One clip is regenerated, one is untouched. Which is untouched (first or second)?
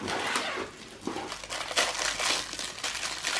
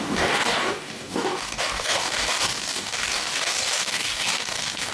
first